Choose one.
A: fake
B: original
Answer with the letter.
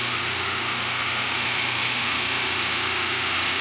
A